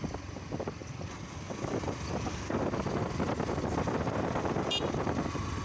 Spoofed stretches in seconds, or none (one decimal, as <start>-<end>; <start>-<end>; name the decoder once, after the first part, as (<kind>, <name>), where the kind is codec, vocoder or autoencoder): none